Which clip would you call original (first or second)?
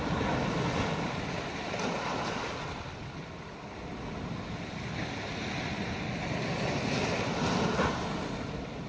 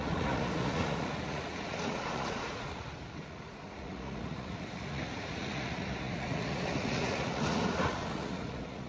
first